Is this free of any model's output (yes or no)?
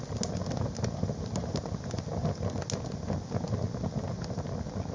yes